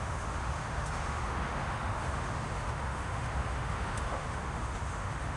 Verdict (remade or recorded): remade